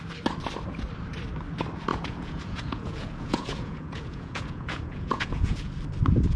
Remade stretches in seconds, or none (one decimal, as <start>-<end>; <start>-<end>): 1.9-5.7